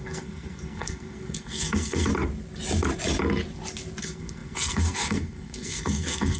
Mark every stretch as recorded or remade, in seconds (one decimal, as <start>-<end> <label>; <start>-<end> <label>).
0.0-2.1 remade; 2.1-4.0 recorded; 4.0-6.4 remade